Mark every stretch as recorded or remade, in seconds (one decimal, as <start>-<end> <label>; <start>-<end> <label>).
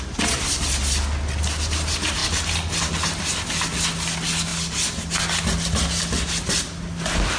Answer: 0.0-7.4 recorded